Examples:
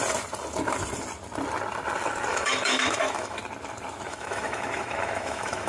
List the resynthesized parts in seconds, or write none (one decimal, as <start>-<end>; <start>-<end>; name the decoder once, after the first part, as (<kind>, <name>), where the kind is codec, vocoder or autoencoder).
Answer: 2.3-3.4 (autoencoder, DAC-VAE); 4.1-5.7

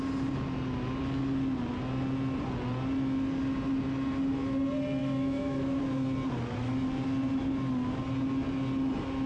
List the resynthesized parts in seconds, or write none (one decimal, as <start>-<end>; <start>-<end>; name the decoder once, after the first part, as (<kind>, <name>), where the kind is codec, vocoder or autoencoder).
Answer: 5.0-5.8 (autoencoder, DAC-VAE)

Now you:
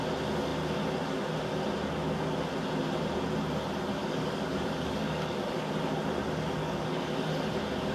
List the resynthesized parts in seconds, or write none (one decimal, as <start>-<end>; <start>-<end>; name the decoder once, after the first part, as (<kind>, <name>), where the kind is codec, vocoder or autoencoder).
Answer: 4.0-5.7 (codec, DAC); 6.6-7.3

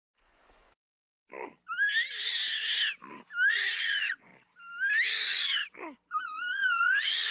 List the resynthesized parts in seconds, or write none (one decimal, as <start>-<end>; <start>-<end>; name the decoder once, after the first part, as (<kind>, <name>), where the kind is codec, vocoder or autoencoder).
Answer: 0.0-0.9 (vocoder, Vocos); 3.5-4.3; 5.1-5.6; 6.2-7.3